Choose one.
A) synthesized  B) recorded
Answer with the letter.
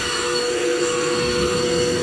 A